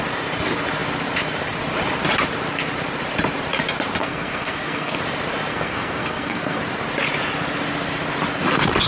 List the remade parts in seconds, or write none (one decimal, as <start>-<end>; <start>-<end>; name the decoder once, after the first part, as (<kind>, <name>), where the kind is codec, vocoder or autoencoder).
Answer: 4.0-5.0 (codec, SNAC); 5.5-6.6